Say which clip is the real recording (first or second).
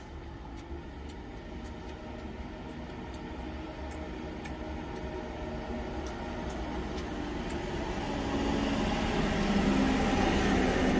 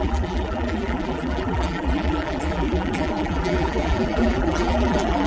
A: first